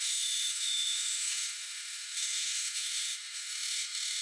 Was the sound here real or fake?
fake